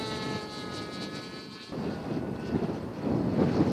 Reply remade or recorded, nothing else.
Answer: remade